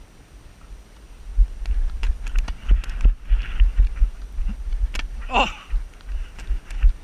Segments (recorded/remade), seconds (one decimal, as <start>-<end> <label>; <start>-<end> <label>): 0.0-7.0 recorded